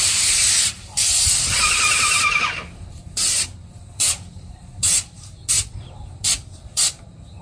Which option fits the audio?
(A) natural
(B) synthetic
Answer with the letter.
B